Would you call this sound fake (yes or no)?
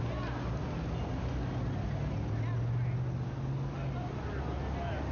no